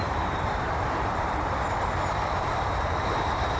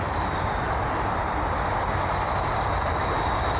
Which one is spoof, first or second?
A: first